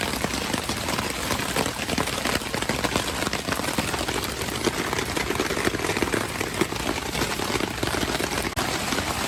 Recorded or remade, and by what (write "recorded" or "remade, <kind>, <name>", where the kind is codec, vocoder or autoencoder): recorded